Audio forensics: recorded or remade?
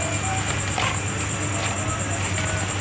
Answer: recorded